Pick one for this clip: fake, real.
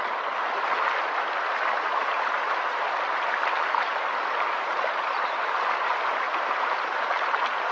real